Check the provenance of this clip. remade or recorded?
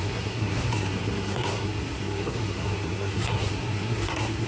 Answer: remade